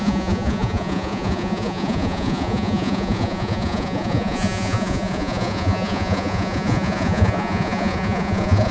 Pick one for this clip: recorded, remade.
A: remade